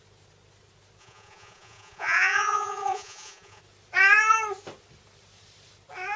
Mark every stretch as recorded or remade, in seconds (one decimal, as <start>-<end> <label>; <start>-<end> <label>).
0.0-1.0 recorded; 1.0-3.6 remade; 3.6-6.2 recorded